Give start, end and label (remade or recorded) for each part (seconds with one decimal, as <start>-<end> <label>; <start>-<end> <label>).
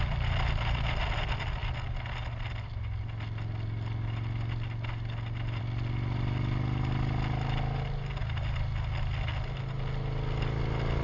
0.0-11.0 recorded